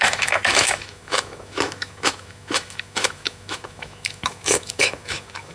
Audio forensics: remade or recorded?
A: remade